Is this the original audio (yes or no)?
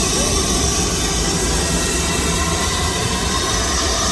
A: yes